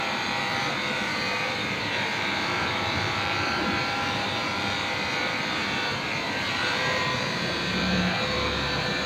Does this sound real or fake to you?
fake